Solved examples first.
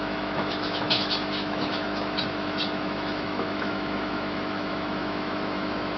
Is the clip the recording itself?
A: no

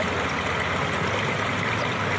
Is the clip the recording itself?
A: yes